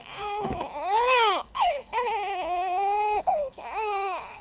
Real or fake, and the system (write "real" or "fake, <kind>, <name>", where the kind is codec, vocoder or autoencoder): fake, codec, HILCodec